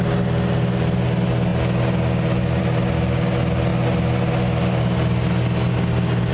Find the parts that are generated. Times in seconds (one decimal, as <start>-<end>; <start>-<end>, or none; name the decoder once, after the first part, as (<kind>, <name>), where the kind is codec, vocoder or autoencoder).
none